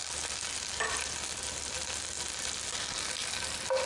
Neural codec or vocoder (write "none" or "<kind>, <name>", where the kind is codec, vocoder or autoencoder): none